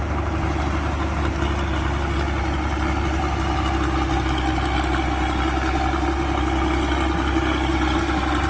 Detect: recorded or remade recorded